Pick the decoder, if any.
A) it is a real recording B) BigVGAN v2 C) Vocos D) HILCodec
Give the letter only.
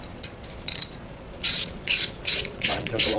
C